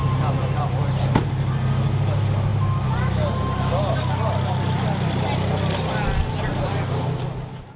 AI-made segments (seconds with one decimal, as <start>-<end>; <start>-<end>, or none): 0.0-1.3